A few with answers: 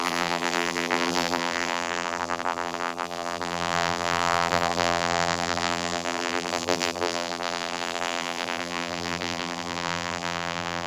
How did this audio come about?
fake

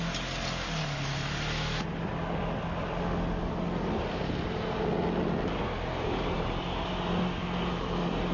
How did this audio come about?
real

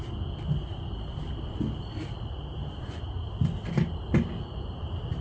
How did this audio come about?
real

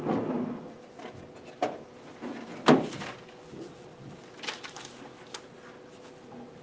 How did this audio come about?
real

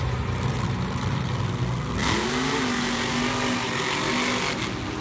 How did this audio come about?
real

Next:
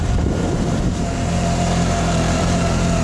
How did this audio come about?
fake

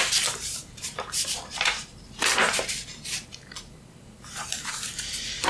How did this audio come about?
fake